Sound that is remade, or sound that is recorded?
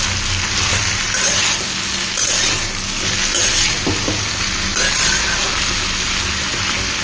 recorded